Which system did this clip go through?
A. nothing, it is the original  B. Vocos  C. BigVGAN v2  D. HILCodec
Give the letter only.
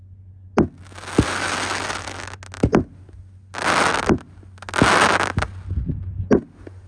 A